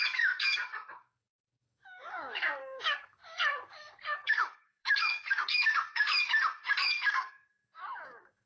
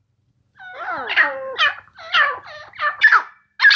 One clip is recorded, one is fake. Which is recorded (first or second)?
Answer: second